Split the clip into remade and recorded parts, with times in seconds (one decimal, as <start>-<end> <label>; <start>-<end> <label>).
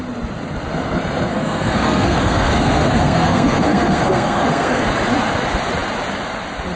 0.0-1.3 recorded; 1.3-4.9 remade; 4.9-6.8 recorded